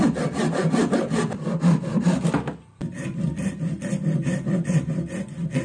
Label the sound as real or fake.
real